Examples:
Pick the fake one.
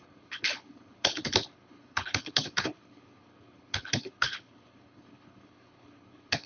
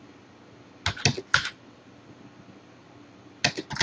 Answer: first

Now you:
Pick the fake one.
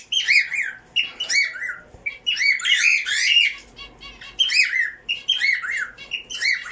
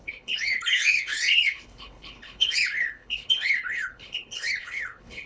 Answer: second